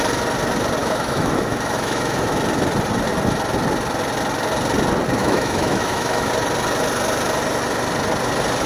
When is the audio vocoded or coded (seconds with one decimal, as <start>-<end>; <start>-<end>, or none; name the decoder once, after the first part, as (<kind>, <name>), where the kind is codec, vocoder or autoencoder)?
0.8-2.4 (autoencoder, DAC-VAE); 5.2-6.3